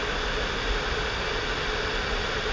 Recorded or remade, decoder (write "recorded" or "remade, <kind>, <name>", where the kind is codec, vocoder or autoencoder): recorded